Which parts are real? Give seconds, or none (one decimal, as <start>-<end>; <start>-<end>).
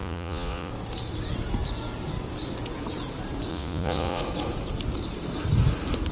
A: 0.7-3.5; 4.2-6.1